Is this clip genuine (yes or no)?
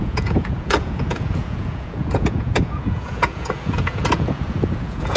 no